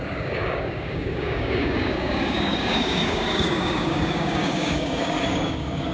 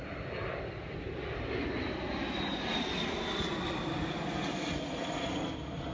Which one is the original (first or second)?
second